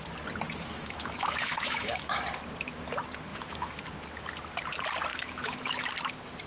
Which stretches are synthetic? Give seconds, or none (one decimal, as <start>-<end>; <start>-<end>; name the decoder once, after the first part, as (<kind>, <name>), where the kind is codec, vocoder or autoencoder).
0.7-2.2 (autoencoder, DAC-VAE); 3.3-3.8; 5.1-5.8